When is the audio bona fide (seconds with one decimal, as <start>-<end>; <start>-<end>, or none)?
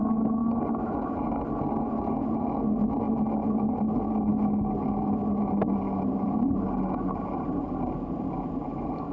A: 0.0-9.1